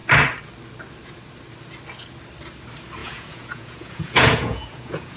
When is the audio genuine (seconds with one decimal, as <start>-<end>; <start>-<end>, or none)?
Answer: 0.0-3.0